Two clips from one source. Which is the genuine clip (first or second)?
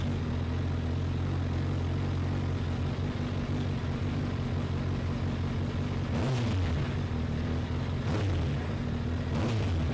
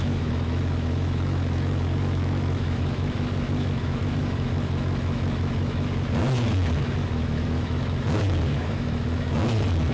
first